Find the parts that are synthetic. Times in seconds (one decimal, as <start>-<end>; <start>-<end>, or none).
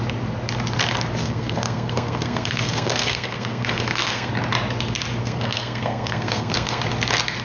1.2-4.3; 5.2-6.8